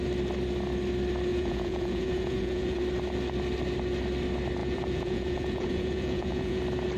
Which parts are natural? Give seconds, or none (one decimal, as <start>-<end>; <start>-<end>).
0.0-1.3; 2.8-4.6; 6.6-7.0